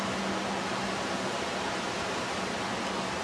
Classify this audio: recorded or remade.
recorded